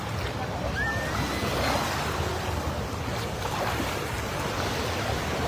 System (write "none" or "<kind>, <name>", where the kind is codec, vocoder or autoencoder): none